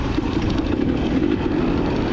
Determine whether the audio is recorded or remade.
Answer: recorded